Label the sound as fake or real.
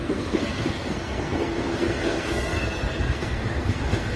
fake